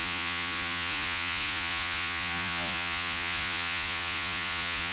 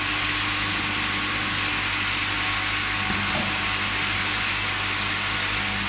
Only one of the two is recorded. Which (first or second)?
second